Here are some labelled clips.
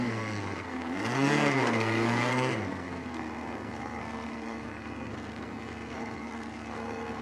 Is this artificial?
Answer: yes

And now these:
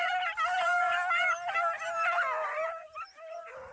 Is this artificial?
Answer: no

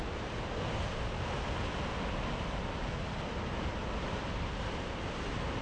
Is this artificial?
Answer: no